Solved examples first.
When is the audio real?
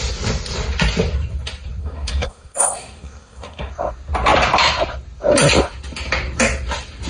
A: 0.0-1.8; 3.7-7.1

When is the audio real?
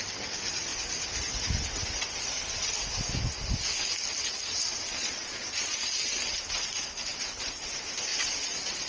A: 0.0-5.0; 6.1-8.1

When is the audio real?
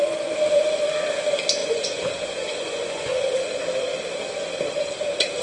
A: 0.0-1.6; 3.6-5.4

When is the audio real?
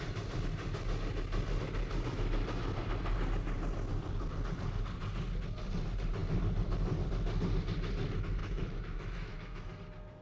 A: 0.0-8.4; 9.7-10.2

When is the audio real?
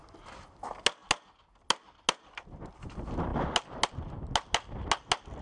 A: 0.0-5.4